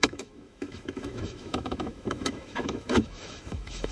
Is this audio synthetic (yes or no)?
yes